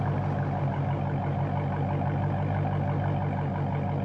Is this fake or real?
real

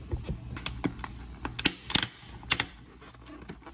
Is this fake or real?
real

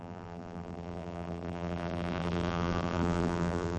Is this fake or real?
fake